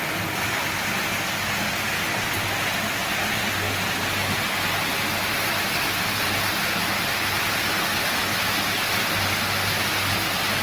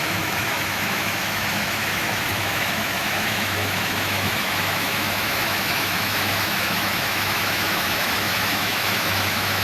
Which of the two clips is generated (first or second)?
second